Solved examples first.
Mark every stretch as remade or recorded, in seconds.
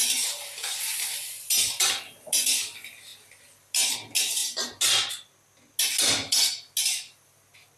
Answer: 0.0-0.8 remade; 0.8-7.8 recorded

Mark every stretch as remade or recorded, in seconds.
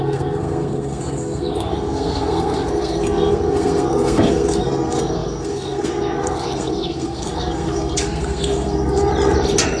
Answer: 0.0-9.1 remade; 9.1-9.8 recorded